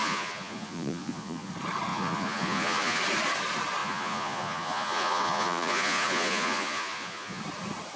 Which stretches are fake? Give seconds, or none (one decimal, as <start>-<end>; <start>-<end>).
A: 0.0-1.5; 1.9-3.0; 3.8-7.4